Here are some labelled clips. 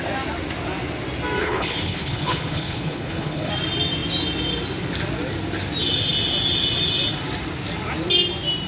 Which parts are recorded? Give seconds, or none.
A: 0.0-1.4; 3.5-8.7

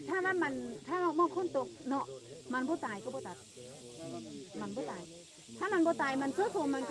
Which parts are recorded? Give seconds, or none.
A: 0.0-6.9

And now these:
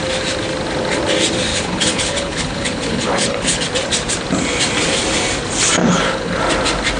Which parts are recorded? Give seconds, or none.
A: 0.0-1.5; 3.6-5.8; 6.4-7.0

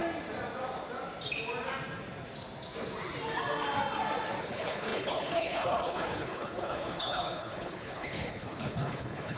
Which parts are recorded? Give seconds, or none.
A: 0.0-4.4

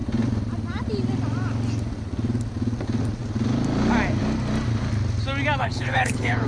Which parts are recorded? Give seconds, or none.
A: 0.0-5.6

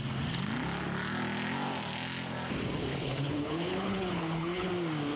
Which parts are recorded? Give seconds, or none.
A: 0.0-2.9; 4.7-5.2

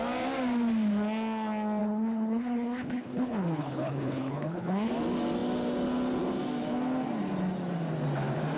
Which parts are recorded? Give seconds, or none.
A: 0.0-1.8; 4.9-8.6